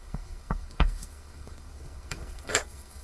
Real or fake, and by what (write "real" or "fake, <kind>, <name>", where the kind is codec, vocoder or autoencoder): fake, codec, SNAC